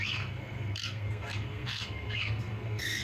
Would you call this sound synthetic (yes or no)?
yes